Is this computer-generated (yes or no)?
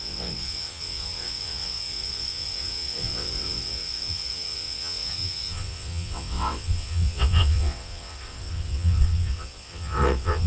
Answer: yes